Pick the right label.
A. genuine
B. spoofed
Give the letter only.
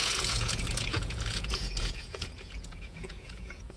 B